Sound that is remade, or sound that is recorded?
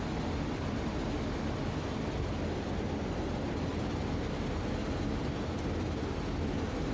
recorded